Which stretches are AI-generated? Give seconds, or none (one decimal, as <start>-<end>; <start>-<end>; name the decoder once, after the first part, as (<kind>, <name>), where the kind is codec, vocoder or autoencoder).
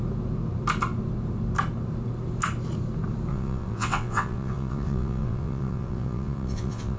3.3-7.0 (vocoder, WaveNeXt)